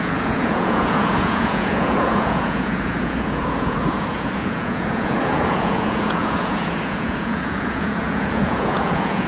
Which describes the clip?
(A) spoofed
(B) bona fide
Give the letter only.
A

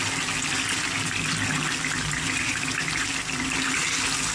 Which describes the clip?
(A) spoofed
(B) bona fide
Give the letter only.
B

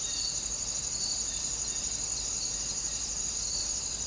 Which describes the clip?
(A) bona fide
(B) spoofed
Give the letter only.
A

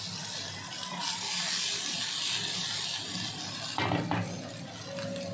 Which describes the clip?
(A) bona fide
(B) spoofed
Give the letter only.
A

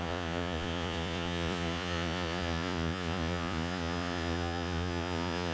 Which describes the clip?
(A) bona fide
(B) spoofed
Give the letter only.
B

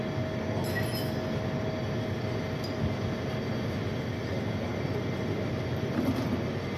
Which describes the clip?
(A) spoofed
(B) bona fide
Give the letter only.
B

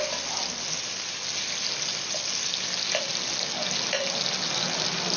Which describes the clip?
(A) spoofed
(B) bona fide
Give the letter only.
B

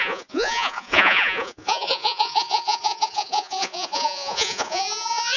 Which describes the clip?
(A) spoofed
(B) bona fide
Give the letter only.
A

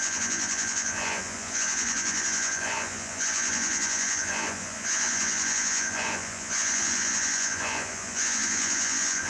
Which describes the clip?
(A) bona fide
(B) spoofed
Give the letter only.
B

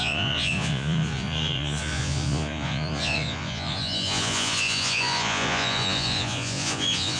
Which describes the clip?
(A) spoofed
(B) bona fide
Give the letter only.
A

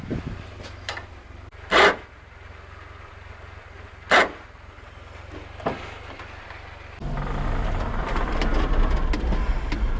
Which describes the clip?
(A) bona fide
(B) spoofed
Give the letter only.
A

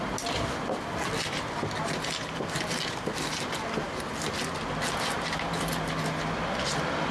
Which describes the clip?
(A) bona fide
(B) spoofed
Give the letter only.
A